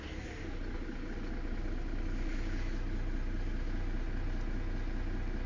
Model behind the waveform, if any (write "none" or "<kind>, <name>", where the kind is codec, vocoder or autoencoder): none